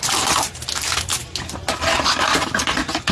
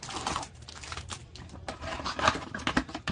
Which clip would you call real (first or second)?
first